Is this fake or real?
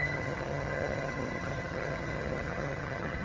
fake